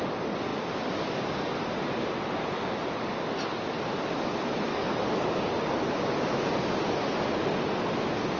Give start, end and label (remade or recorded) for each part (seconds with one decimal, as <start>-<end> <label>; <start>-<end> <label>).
0.0-4.7 recorded; 4.7-5.5 remade; 5.5-8.4 recorded